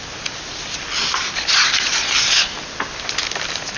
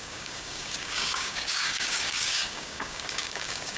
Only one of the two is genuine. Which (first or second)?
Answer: first